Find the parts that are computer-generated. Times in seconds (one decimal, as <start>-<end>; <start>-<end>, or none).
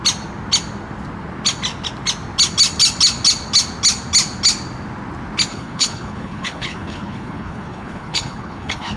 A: 5.5-9.0